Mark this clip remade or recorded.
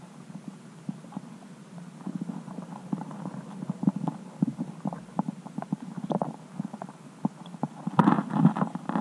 recorded